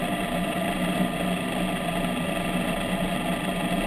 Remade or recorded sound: recorded